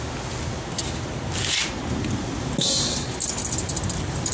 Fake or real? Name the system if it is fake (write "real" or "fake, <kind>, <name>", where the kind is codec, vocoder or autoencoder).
real